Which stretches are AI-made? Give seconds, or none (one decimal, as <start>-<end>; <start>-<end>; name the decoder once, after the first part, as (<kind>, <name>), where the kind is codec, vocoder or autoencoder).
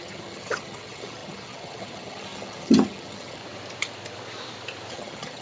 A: 0.0-3.4 (vocoder, HiFi-GAN); 4.9-5.4